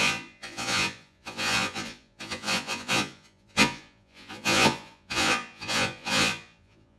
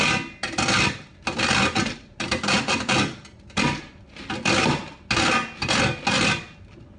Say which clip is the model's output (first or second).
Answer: first